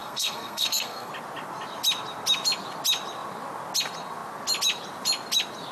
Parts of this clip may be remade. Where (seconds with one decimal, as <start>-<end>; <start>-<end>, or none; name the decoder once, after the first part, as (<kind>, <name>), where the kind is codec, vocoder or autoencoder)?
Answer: 0.0-1.1 (codec, SNAC)